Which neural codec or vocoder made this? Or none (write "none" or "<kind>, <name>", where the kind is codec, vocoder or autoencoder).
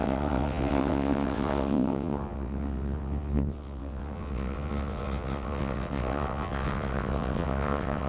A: vocoder, WaveNeXt